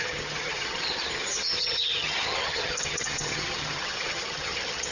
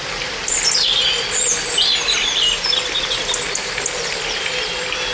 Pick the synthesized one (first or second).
first